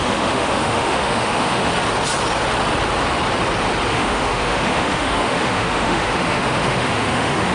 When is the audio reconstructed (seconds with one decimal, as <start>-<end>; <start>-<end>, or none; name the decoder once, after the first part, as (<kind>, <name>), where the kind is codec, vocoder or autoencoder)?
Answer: 0.0-1.7 (autoencoder, DAC-VAE); 3.9-7.5